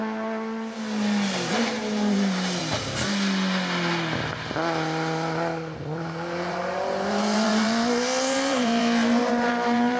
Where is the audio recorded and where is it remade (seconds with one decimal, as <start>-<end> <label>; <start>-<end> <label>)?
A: 0.0-1.5 recorded; 1.5-2.6 remade; 2.6-6.5 recorded; 6.5-10.0 remade